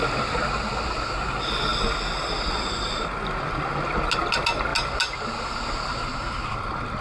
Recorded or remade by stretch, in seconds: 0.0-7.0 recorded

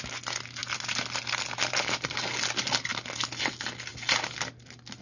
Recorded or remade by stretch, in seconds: 0.0-5.0 recorded

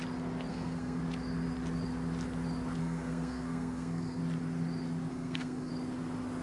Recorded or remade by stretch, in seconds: 0.0-0.5 recorded; 0.5-1.0 remade; 1.0-2.8 recorded; 2.8-4.2 remade; 4.2-5.1 recorded; 5.1-5.7 remade; 5.7-6.4 recorded

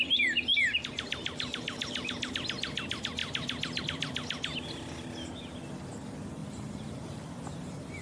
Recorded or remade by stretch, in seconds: 0.0-2.3 remade; 2.3-6.4 recorded; 6.4-7.2 remade; 7.2-8.0 recorded

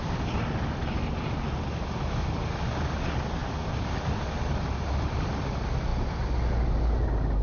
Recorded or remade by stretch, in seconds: 0.0-7.4 recorded

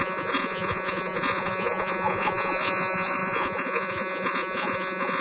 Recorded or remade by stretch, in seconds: 0.0-5.2 remade

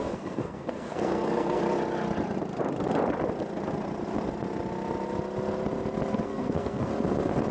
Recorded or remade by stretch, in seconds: 0.0-1.6 remade; 1.6-6.1 recorded; 6.1-6.9 remade; 6.9-7.5 recorded